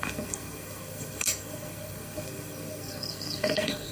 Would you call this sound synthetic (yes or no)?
yes